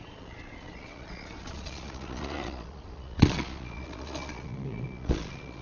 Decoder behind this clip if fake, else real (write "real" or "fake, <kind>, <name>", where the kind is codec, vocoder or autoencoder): fake, vocoder, Vocos